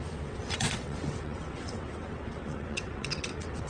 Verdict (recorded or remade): remade